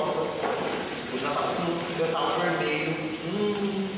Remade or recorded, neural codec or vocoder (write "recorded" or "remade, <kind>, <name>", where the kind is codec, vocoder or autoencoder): recorded